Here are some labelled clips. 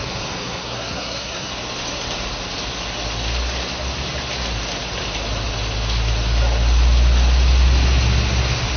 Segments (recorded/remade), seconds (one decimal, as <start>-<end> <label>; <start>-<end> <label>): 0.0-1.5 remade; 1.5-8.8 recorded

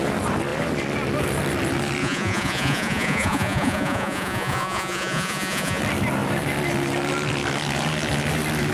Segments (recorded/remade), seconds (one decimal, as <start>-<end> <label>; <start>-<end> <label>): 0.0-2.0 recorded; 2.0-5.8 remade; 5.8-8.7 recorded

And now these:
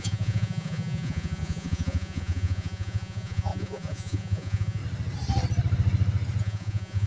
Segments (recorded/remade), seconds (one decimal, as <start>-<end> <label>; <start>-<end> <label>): 0.0-4.8 remade; 4.8-6.4 recorded; 6.4-7.1 remade

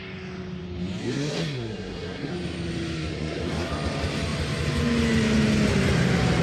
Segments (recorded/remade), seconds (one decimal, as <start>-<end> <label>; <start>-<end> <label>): 0.0-1.0 recorded; 1.0-2.3 remade; 2.3-3.1 recorded; 3.1-3.7 remade; 3.7-6.4 recorded